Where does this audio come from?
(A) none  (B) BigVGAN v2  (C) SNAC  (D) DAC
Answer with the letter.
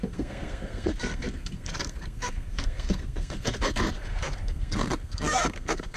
C